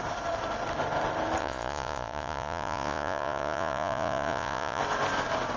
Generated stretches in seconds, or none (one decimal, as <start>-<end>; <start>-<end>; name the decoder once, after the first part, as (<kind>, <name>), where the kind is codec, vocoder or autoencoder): 1.4-4.8 (vocoder, Vocos)